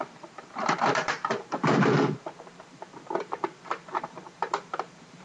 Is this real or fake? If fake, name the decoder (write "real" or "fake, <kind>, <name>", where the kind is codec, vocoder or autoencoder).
fake, vocoder, BigVGAN v2